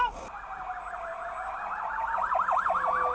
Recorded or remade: recorded